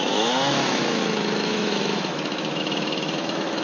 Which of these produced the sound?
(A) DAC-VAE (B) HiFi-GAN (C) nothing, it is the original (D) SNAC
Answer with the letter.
A